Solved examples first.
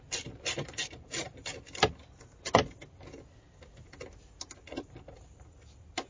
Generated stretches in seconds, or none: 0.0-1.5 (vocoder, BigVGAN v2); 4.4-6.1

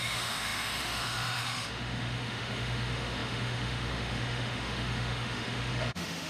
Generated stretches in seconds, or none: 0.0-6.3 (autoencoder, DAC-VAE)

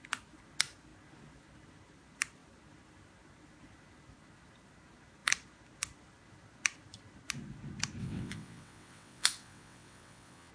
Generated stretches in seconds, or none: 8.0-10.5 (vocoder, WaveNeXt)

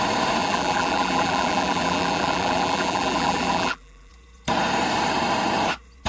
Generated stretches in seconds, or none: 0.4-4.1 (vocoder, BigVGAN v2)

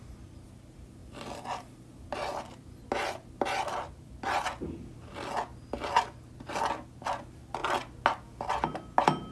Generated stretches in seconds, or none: none